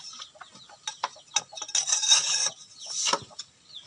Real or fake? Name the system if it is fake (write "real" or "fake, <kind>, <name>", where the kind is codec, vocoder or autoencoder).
real